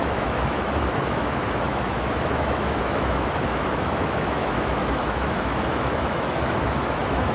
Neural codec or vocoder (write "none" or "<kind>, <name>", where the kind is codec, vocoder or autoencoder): autoencoder, DAC-VAE